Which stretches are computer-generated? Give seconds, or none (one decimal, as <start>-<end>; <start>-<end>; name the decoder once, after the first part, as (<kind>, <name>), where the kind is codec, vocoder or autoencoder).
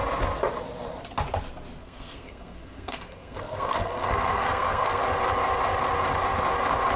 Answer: 1.8-5.0 (codec, SNAC)